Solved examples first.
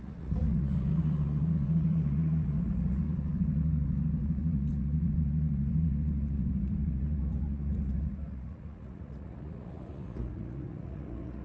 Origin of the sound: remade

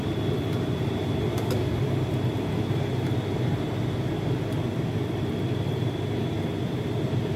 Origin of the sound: recorded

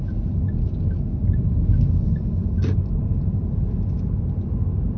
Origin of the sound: recorded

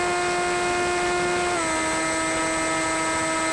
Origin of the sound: recorded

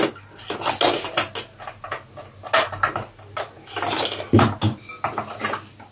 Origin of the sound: recorded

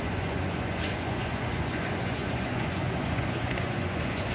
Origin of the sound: remade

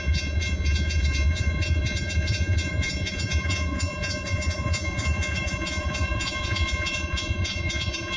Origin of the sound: remade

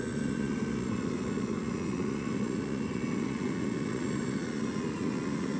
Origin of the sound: remade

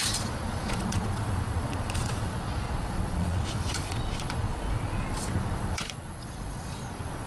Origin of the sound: remade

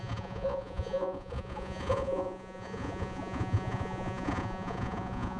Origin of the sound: remade